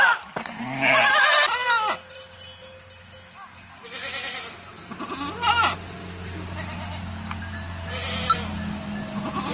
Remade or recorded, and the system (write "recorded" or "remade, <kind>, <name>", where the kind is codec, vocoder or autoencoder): recorded